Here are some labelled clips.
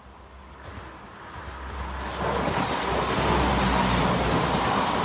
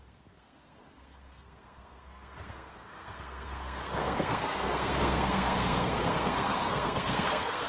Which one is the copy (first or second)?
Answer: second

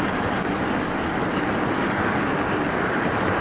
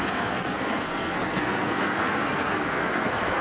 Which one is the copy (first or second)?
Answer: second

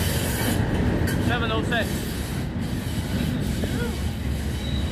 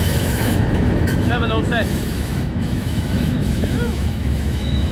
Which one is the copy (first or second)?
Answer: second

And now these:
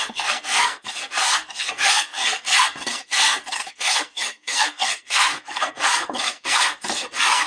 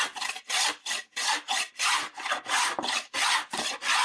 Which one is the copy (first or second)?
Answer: first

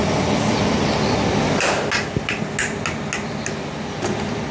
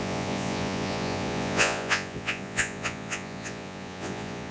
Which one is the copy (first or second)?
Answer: second